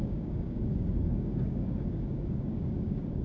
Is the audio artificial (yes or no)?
yes